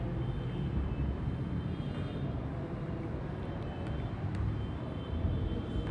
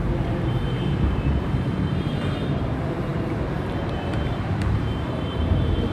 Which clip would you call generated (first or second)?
second